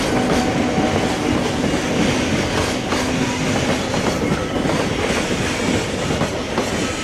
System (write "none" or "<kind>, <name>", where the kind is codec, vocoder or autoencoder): none